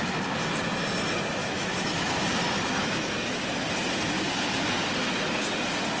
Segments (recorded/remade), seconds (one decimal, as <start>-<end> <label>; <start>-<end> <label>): 0.0-1.4 recorded; 1.4-2.3 remade; 2.3-2.8 recorded; 2.8-3.4 remade; 3.4-6.0 recorded